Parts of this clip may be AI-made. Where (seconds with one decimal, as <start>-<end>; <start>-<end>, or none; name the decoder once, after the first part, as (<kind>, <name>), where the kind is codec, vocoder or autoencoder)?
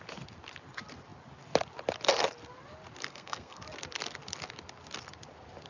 3.1-3.6 (codec, SNAC)